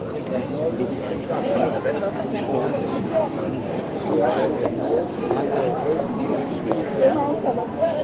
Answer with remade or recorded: remade